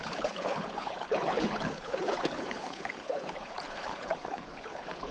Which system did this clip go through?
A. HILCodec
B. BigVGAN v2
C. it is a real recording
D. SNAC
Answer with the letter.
A